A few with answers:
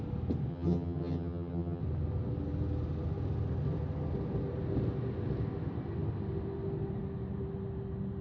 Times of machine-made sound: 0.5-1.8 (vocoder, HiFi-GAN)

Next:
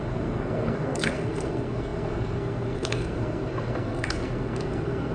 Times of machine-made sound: 0.0-5.1 (codec, SNAC)

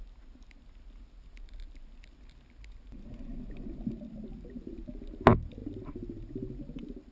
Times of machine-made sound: none

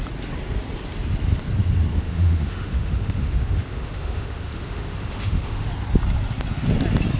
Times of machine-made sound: 1.9-5.7 (autoencoder, DAC-VAE)

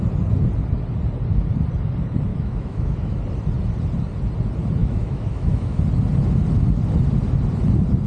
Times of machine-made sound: 2.3-3.2 (autoencoder, DAC-VAE); 4.8-5.8